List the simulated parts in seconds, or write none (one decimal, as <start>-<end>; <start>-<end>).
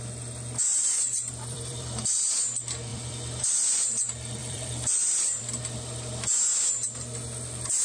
0.7-2.2; 2.9-3.4; 4.4-5.6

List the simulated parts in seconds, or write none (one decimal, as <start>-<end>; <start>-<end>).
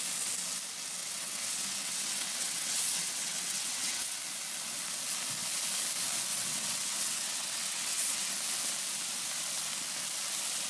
1.0-4.2; 6.3-8.3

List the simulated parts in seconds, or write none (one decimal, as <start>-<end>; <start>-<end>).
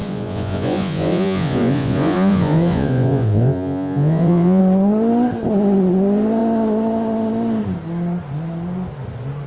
0.0-4.6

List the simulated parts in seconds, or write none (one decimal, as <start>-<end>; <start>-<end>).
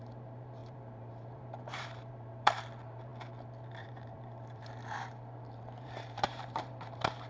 0.0-3.1; 3.7-7.3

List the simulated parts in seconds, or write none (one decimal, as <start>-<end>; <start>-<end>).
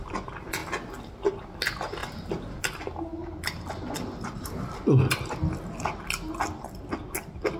none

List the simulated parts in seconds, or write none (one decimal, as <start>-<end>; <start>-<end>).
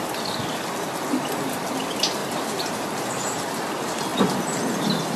none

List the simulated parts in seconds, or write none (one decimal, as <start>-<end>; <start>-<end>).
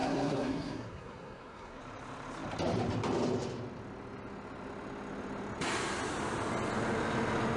0.0-1.8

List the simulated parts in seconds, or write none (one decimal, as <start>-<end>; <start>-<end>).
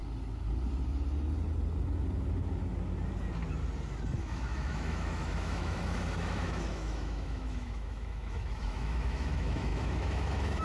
4.2-10.6